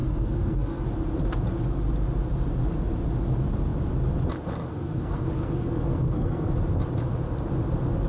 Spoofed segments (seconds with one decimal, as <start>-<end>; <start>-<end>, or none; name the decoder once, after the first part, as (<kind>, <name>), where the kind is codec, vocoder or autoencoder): 0.0-0.8 (codec, SNAC); 4.7-6.5